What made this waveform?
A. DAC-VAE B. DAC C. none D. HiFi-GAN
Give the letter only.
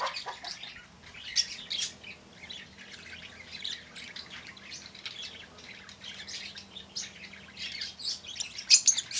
C